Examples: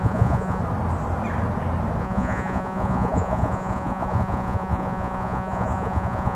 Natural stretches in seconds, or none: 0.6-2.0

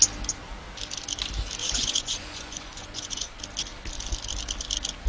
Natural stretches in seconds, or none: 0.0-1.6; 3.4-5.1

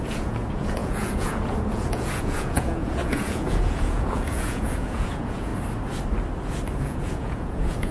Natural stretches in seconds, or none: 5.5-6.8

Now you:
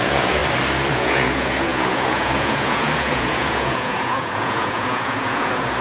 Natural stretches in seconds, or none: 0.4-0.9

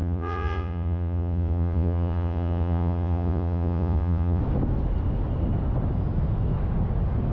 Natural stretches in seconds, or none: 4.4-7.3